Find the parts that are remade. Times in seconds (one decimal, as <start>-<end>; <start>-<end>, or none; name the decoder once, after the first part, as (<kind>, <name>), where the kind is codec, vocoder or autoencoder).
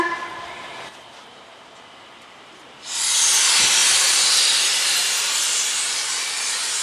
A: 1.3-3.2 (vocoder, BigVGAN v2); 3.8-6.3